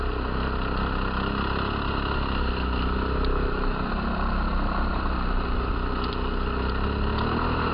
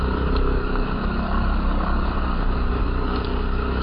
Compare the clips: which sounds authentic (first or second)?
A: first